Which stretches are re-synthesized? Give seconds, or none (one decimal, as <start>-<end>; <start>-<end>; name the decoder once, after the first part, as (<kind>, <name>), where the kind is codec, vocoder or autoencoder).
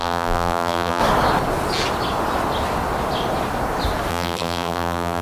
0.0-1.0 (vocoder, BigVGAN v2); 4.1-5.2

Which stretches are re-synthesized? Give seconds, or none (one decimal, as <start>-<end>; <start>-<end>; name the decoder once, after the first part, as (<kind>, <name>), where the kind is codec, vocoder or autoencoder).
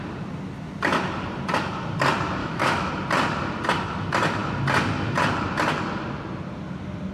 2.4-2.9 (autoencoder, DAC-VAE)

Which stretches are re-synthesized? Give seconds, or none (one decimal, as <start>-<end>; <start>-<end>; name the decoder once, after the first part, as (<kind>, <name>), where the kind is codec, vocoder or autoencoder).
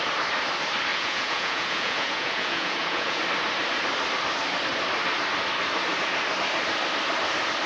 0.9-3.2 (vocoder, Vocos)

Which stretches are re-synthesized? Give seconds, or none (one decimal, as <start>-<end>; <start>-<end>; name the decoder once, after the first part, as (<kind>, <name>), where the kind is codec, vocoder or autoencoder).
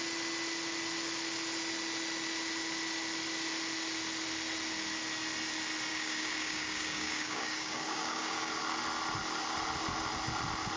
5.9-8.5 (codec, DAC)